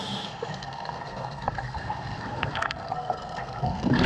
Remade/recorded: remade